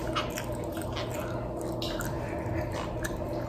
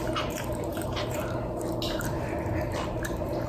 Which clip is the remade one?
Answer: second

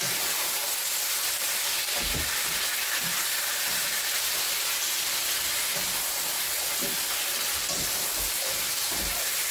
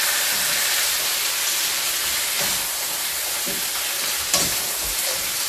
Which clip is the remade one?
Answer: second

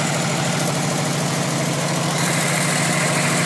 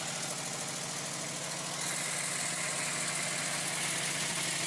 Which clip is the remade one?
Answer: first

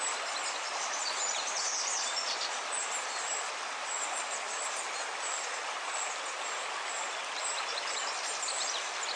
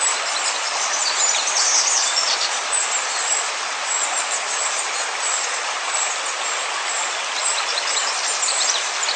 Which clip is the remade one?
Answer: second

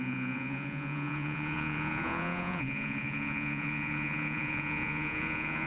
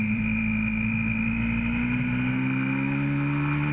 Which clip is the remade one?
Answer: first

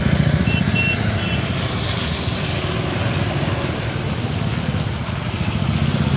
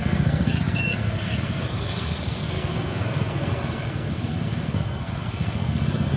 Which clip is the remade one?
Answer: second